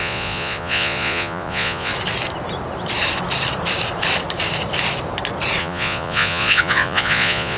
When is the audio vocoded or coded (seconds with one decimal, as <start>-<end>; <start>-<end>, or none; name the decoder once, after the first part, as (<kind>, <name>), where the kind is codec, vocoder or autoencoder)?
0.0-1.9 (vocoder, Vocos); 5.6-7.6